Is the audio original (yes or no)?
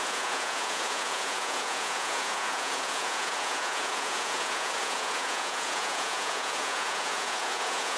no